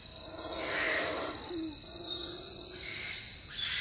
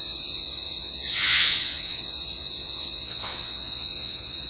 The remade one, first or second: second